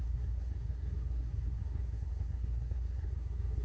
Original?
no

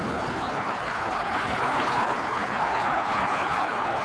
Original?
no